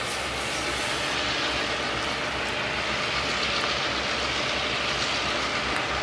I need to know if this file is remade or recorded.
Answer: recorded